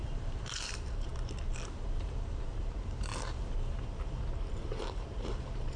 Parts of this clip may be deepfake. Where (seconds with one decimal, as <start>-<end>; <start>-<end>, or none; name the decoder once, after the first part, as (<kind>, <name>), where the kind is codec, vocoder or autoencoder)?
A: 0.0-1.1 (vocoder, BigVGAN v2); 2.6-3.1; 4.5-5.8